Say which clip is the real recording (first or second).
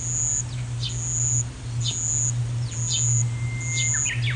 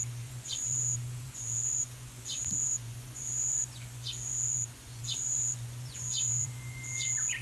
first